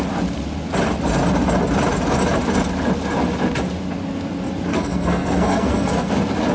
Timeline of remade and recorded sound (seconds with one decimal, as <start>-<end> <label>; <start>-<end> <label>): 0.0-4.7 recorded; 4.7-6.1 remade; 6.1-6.5 recorded